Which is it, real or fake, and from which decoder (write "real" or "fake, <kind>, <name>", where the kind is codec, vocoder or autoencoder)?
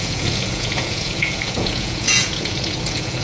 fake, vocoder, Vocos